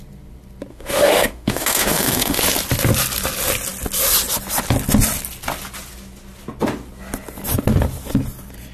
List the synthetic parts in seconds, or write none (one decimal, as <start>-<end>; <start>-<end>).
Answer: 0.7-2.4